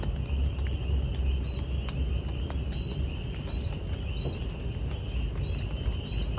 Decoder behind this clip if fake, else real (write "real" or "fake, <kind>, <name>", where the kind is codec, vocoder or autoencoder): real